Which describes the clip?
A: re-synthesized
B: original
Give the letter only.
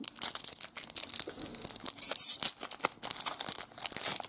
B